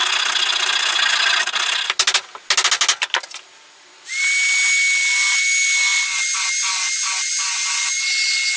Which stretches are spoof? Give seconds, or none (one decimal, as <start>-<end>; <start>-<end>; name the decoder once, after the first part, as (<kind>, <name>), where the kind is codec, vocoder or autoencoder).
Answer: none